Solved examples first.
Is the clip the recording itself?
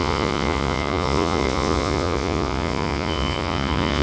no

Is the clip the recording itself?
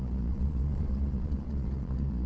no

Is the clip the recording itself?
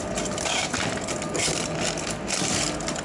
yes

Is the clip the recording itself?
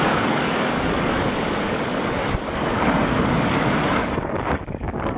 no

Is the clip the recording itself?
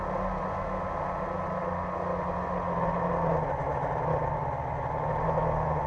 yes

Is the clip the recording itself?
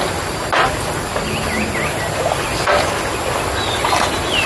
yes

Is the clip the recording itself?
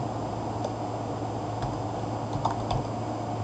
yes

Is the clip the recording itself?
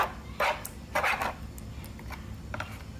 yes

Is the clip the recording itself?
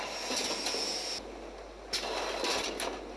yes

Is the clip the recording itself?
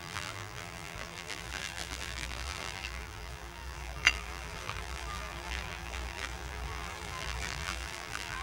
no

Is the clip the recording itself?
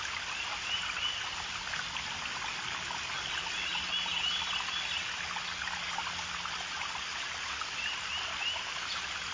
yes